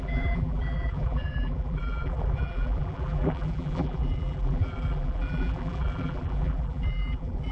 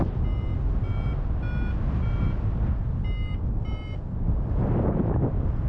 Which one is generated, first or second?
first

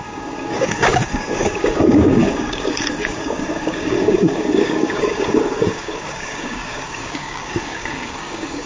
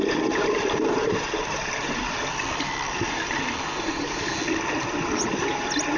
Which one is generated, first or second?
first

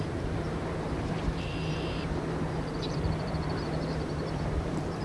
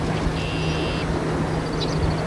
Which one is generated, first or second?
first